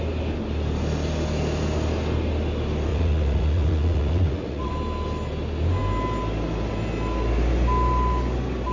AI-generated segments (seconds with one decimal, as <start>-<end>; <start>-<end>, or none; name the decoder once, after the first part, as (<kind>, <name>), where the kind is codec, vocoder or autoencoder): 2.9-4.7 (vocoder, Vocos)